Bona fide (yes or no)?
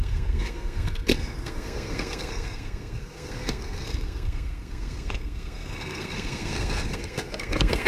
no